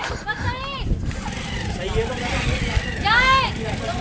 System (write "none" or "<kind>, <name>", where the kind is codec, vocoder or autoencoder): none